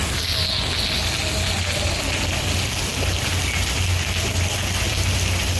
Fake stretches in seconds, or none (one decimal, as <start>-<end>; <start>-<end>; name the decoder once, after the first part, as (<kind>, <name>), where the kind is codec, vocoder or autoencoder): none